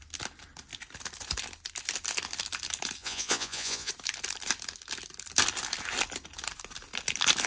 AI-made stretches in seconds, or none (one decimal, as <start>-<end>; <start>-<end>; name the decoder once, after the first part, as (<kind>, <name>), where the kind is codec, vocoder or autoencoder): 3.0-3.9 (vocoder, Vocos)